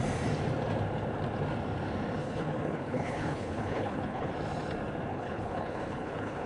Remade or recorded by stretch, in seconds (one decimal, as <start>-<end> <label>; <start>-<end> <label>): 0.0-2.2 recorded; 2.2-4.3 remade; 4.3-5.1 recorded; 5.1-6.5 remade